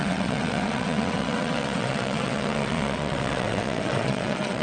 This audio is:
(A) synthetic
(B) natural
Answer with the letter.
A